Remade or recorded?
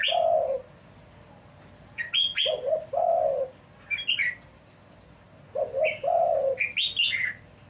recorded